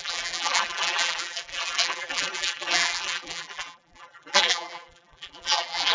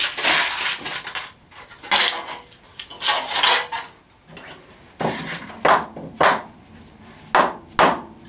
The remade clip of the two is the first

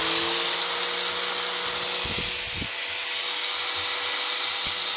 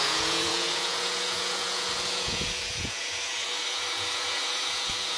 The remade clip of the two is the second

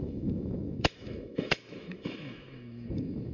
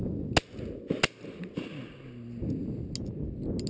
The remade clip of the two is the first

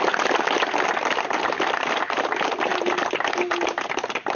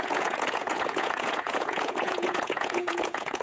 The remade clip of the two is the second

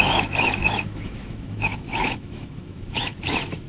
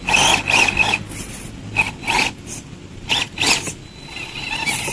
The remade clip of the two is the first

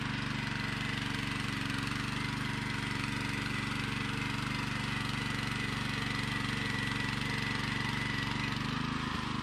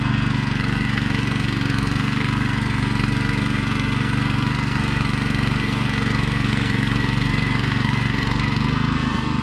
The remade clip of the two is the second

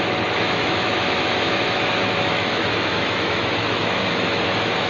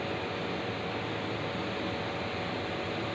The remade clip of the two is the first